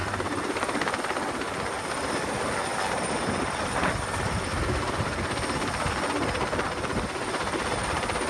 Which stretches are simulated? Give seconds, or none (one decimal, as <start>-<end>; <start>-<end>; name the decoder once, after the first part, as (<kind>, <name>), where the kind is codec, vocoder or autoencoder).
0.0-1.0 (vocoder, BigVGAN v2)